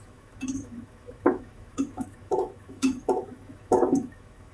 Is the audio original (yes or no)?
no